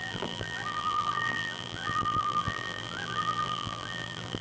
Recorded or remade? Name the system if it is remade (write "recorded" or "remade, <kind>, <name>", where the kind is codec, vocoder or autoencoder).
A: remade, vocoder, BigVGAN v2